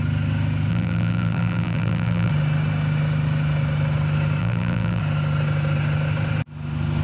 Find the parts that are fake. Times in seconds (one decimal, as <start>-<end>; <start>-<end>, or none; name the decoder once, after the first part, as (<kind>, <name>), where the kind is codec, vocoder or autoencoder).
0.7-2.3 (vocoder, BigVGAN v2); 4.4-5.0